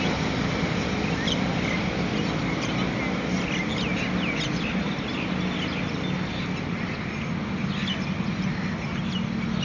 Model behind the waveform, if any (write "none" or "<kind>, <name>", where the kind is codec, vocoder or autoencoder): none